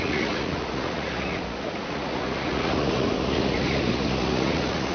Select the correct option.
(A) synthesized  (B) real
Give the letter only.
A